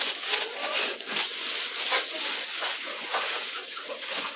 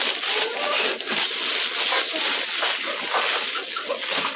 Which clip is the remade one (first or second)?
first